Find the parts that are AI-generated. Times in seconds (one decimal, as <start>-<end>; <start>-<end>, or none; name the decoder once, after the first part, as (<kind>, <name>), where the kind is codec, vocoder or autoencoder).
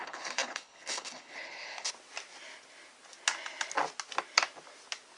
0.0-1.9 (codec, HILCodec)